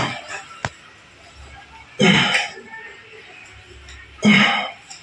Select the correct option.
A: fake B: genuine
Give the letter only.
B